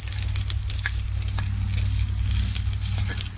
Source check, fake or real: real